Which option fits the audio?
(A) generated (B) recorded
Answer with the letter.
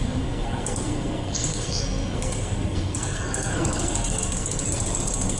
A